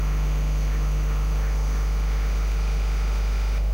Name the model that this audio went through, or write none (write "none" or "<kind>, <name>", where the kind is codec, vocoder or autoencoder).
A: autoencoder, DAC-VAE